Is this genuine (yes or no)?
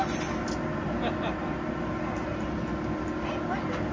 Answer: yes